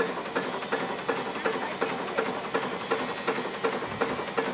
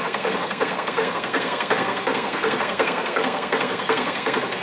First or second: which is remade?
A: second